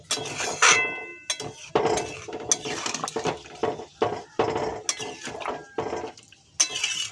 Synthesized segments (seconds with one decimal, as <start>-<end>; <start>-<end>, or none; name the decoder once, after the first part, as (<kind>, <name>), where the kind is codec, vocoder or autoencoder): none